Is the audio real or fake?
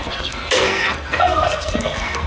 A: fake